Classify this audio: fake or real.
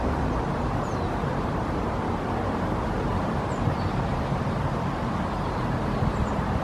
fake